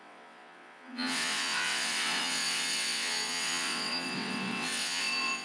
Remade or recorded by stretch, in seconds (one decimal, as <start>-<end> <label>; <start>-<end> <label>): 0.0-5.4 remade